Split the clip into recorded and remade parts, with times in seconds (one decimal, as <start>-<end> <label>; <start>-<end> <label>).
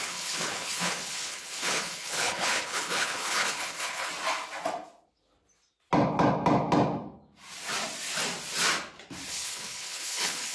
0.0-4.1 remade; 4.1-9.3 recorded; 9.3-10.5 remade